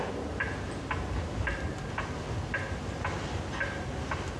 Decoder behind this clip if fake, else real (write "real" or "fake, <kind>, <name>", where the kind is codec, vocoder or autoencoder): real